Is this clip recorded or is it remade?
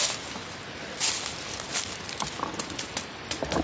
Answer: recorded